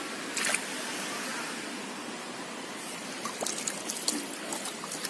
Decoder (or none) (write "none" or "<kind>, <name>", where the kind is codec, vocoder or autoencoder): none